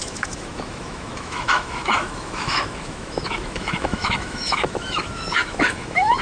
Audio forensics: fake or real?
fake